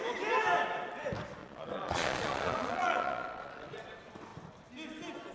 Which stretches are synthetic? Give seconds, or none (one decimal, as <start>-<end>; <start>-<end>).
1.4-3.9

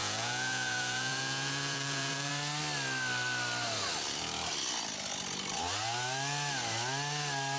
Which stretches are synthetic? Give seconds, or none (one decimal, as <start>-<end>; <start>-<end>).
0.0-2.3

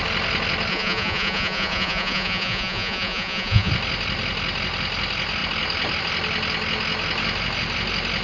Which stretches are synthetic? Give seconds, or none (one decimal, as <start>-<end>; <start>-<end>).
0.7-3.7

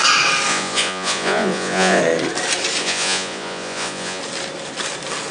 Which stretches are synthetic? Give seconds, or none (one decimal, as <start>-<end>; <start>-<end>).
0.5-2.0; 2.8-4.2

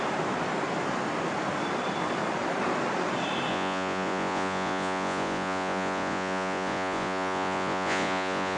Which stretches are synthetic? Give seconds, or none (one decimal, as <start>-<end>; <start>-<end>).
3.5-8.6

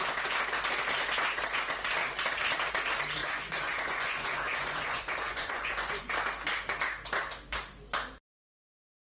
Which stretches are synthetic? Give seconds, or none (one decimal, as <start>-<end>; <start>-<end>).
3.2-6.1

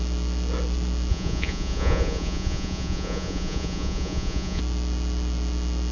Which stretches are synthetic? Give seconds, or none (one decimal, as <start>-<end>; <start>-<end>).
1.1-4.6